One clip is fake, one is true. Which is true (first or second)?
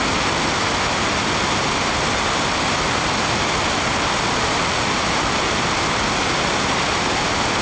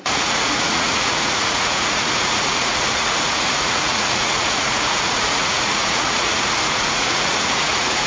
first